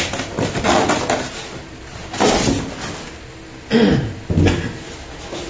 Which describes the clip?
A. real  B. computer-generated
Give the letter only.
A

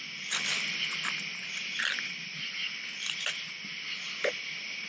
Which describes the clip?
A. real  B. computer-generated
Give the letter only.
A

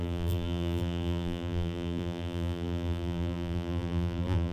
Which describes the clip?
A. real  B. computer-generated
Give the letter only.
B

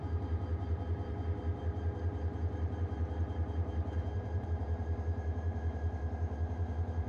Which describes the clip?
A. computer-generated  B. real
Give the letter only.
A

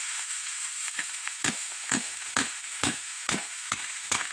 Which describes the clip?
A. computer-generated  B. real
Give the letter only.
A